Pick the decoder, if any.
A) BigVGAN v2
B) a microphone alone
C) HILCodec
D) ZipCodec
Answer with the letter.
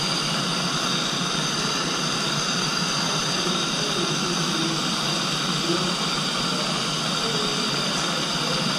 B